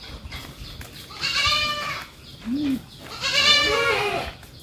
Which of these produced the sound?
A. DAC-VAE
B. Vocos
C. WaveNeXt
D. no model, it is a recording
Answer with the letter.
D